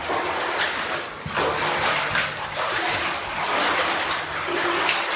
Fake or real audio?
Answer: real